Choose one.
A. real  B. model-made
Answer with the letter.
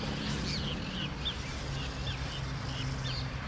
A